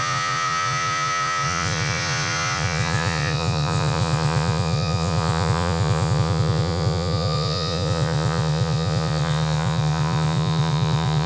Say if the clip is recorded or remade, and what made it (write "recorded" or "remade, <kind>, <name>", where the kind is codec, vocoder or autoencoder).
remade, vocoder, Vocos